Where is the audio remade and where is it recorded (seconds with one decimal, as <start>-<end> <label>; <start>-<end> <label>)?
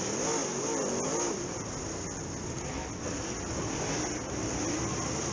0.0-5.3 recorded